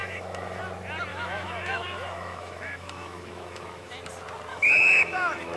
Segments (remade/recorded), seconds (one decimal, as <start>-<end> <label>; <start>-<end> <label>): 0.0-0.6 remade; 0.6-1.1 recorded; 1.1-3.9 remade; 3.9-4.5 recorded; 4.5-5.6 remade